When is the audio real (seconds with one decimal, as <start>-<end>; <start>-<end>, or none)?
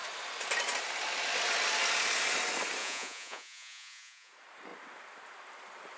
0.0-2.8; 4.3-6.0